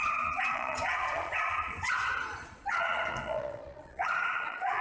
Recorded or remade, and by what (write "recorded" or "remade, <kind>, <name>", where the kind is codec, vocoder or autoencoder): remade, vocoder, Vocos